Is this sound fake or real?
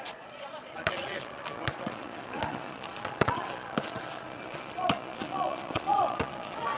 fake